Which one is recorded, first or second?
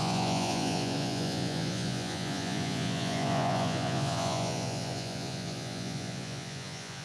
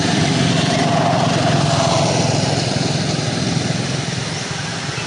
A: second